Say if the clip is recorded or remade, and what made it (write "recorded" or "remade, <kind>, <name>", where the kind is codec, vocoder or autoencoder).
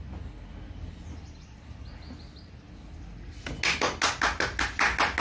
recorded